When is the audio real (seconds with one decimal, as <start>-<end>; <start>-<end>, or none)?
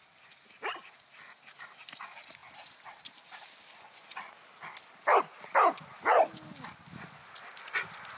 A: 0.0-8.2